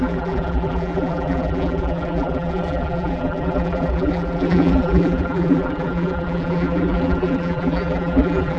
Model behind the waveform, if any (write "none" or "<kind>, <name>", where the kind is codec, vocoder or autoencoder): vocoder, BigVGAN v2